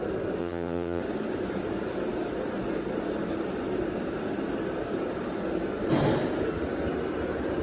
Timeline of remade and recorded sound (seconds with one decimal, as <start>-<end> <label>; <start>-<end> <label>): 0.0-0.4 recorded; 0.4-1.0 remade; 1.0-7.6 recorded